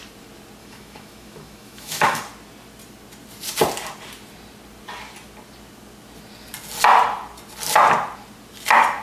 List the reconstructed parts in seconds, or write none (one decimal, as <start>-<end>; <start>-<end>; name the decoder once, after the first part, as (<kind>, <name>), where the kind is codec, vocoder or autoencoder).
0.6-2.2 (autoencoder, DAC-VAE)